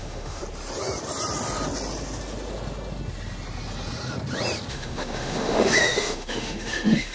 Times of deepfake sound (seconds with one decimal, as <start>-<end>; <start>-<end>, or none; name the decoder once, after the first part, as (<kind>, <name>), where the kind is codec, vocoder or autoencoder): 0.0-0.4 (autoencoder, DAC-VAE); 4.7-7.1